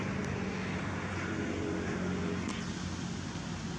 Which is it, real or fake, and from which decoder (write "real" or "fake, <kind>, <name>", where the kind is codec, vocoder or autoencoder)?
real